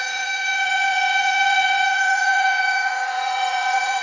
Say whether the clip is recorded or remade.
remade